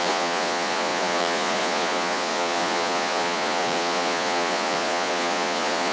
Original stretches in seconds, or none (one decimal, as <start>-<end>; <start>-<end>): none